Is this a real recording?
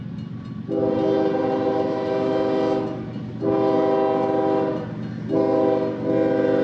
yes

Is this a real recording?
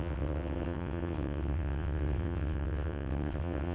no